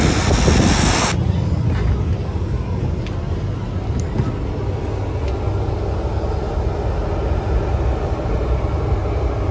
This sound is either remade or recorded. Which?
recorded